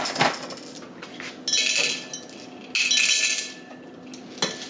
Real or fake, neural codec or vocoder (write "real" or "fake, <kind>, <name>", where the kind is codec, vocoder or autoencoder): real